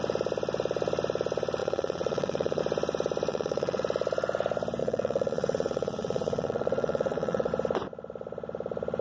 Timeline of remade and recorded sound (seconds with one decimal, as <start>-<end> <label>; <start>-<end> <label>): 0.0-1.6 recorded; 1.6-2.6 remade; 2.6-3.3 recorded; 3.3-3.8 remade; 3.8-4.8 recorded; 4.8-7.5 remade; 7.5-9.0 recorded